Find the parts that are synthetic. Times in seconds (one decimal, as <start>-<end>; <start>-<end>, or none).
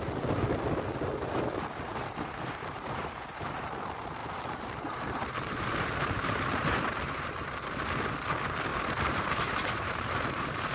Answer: 1.9-3.8; 4.2-7.3; 8.7-10.7